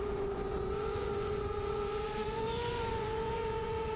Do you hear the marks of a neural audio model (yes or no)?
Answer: yes